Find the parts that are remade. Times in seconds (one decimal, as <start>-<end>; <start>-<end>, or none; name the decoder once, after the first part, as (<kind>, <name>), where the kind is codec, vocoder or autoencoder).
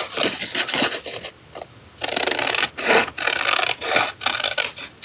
none